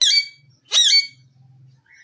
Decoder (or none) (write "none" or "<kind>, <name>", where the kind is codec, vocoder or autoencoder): none